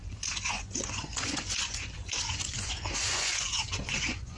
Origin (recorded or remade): remade